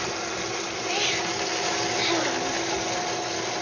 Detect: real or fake real